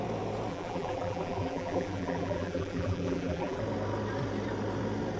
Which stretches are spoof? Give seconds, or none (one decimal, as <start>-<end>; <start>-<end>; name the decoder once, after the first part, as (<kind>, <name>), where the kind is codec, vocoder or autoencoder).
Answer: 0.5-3.6 (vocoder, BigVGAN v2)